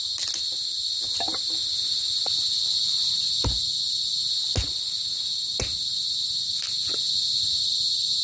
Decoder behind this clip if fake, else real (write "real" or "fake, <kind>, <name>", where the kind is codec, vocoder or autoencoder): real